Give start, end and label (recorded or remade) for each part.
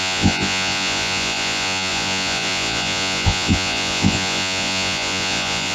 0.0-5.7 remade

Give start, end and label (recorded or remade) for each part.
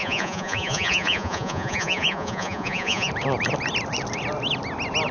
0.0-3.1 remade; 3.1-5.1 recorded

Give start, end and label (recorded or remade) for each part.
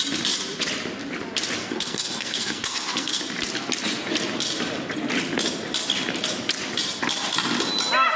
0.0-1.6 recorded; 1.6-3.2 remade; 3.2-8.2 recorded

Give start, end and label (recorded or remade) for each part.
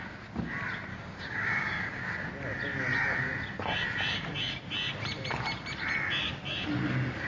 0.0-0.9 recorded; 0.9-2.0 remade; 2.0-7.3 recorded